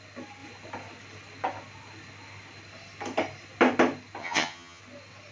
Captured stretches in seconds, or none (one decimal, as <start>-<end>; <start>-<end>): 0.0-4.2; 4.8-5.3